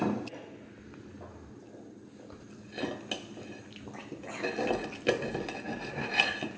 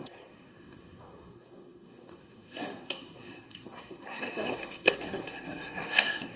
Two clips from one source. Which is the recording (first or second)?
first